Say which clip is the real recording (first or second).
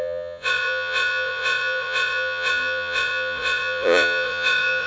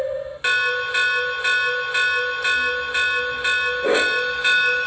second